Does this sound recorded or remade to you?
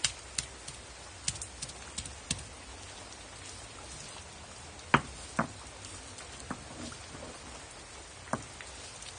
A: recorded